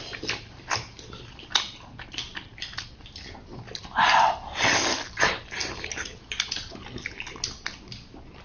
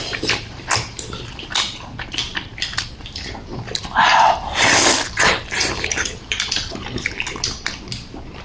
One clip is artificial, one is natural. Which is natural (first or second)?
first